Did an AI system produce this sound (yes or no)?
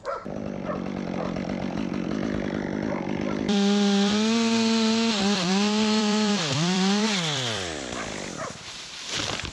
yes